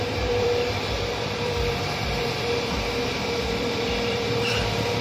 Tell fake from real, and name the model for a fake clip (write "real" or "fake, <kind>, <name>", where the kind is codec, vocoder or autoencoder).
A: fake, vocoder, BigVGAN v2